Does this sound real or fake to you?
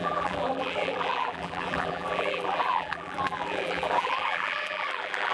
fake